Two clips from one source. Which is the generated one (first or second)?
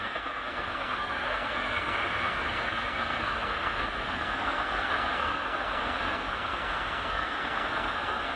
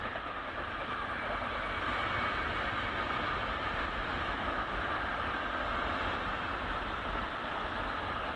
first